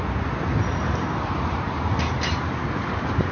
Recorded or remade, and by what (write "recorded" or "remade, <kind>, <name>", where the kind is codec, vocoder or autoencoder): recorded